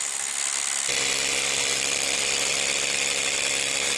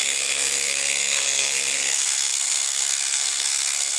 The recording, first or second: first